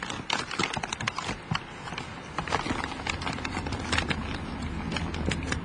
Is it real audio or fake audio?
real